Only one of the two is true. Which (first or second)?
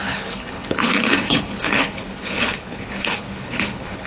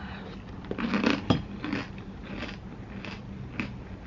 second